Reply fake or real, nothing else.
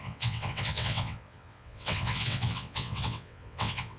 fake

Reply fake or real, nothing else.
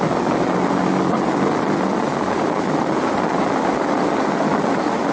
real